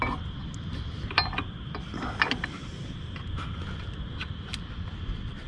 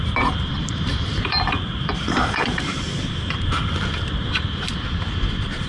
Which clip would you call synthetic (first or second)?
second